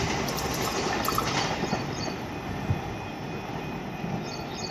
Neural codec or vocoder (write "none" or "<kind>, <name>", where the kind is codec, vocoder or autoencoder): none